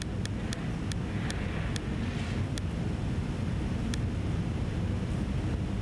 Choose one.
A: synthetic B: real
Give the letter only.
B